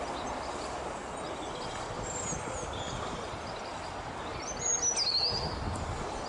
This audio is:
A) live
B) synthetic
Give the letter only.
A